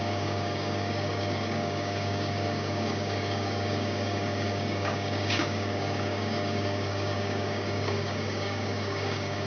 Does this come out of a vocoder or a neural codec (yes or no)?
yes